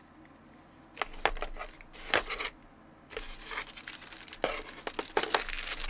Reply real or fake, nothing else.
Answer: real